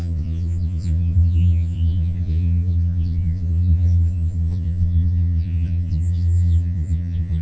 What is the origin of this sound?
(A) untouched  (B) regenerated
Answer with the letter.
B